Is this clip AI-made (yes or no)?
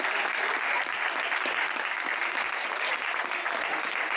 no